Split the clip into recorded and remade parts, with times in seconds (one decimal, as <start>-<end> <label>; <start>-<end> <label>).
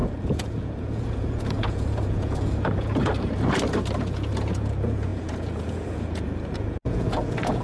0.0-3.1 remade; 3.1-4.0 recorded; 4.0-7.6 remade